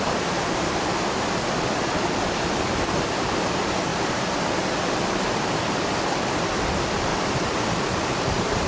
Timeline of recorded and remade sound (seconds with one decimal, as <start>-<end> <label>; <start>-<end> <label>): 0.0-0.9 remade; 0.9-1.8 recorded; 1.8-8.7 remade